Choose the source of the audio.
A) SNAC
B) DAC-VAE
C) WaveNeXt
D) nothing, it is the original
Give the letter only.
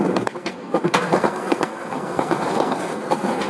A